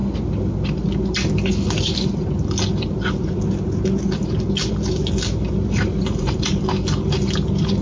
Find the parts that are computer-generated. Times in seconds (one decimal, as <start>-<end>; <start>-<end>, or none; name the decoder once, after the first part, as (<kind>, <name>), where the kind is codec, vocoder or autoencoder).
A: none